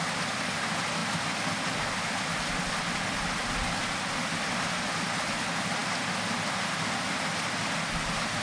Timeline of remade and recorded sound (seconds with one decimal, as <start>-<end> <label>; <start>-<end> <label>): 0.0-8.4 recorded